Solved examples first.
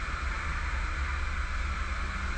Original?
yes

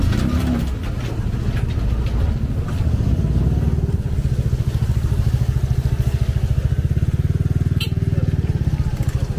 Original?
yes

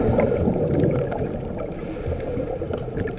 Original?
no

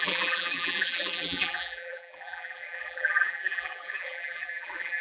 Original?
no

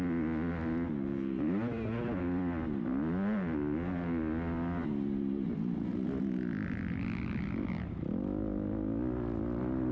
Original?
yes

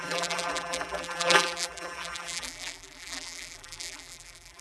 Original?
no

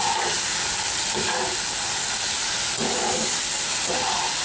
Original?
yes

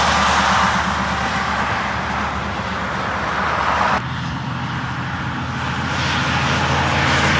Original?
yes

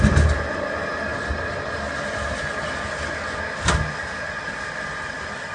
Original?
yes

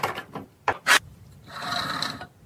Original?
no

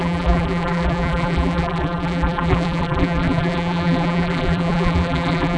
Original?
no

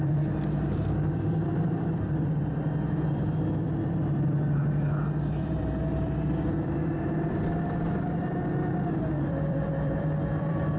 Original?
no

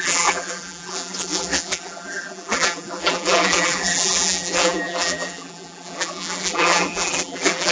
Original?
no